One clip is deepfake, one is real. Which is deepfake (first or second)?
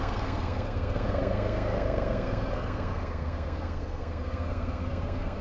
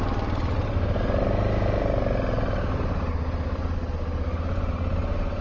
first